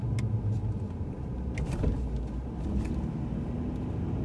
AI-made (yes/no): no